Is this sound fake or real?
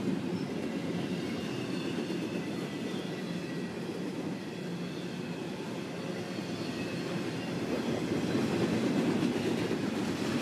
real